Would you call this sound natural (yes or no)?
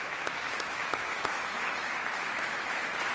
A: no